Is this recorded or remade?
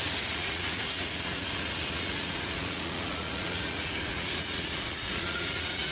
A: remade